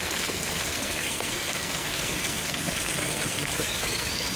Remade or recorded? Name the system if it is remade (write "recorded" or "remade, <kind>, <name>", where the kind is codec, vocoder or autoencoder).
remade, codec, SNAC